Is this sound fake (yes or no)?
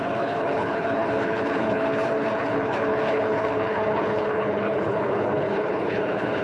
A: yes